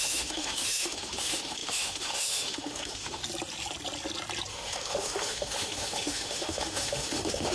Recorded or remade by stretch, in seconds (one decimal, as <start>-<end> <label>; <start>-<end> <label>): 0.0-3.2 remade; 3.2-4.5 recorded; 4.5-7.5 remade